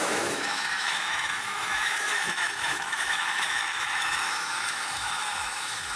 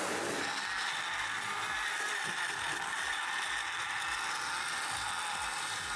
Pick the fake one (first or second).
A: first